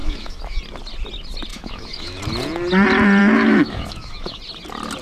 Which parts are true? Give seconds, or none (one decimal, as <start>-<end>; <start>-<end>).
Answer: 0.6-1.5; 2.2-3.2; 4.4-5.0